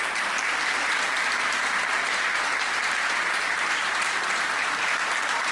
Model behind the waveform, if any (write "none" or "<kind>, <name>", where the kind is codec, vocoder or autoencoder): vocoder, BigVGAN v2